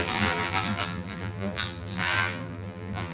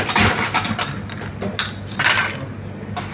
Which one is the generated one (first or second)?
first